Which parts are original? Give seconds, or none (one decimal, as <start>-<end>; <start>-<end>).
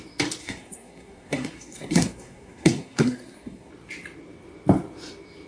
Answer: 0.0-0.4; 3.7-5.5